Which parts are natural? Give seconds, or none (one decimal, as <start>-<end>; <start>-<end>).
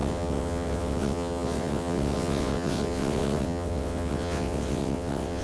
none